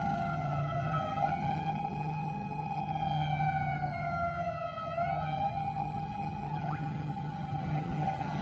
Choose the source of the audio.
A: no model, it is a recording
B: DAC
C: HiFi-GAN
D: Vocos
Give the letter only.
C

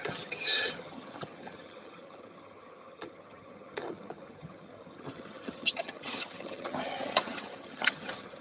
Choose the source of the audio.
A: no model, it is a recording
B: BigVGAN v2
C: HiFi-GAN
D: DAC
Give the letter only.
C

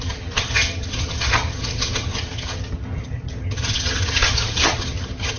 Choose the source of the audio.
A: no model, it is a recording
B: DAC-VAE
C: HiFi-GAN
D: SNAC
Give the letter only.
C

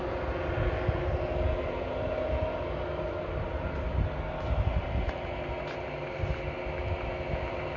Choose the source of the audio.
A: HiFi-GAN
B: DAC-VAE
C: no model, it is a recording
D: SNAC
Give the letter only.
C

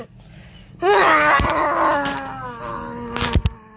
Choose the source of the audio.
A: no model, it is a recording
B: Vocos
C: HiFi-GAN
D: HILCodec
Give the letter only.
A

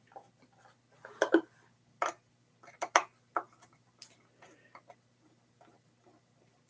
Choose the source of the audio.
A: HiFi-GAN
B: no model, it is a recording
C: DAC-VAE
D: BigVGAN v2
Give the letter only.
B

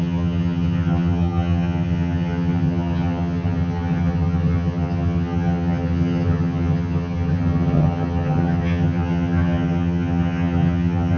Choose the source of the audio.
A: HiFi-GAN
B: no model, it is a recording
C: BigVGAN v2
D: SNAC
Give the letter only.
A